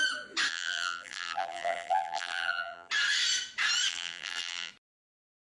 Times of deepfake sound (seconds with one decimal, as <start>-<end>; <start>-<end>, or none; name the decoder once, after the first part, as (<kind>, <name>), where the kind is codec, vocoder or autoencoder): 0.5-2.9 (vocoder, BigVGAN v2); 3.9-4.7